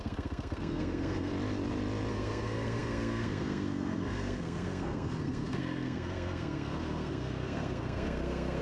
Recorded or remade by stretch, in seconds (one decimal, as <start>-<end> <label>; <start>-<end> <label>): 0.0-1.3 remade; 1.3-2.1 recorded; 2.1-8.6 remade